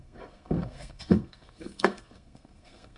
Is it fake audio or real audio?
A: fake